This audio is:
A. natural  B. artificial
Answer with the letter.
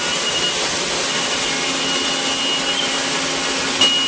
A